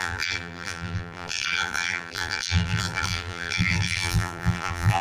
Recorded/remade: remade